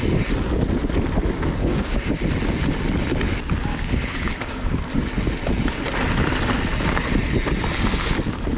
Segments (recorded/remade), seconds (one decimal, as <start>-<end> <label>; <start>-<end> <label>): 0.0-1.6 recorded; 1.6-2.2 remade; 2.2-3.7 recorded; 3.7-4.8 remade; 4.8-8.6 recorded